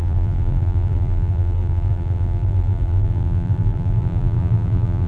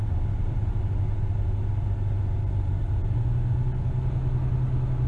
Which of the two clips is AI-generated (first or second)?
first